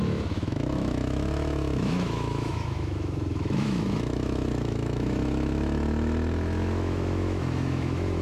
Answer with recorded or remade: remade